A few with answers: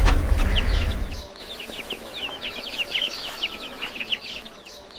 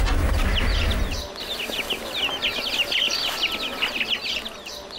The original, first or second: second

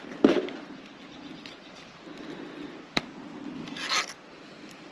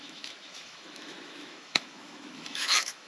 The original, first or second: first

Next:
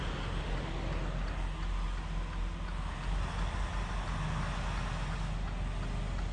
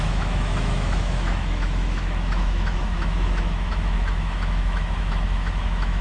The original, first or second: first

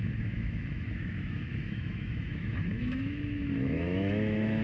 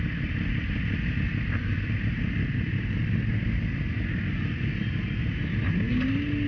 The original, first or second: second